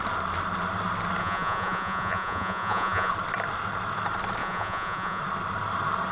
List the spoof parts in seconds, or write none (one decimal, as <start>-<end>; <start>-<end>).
1.2-3.1; 4.4-5.2